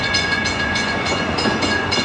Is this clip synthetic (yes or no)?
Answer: yes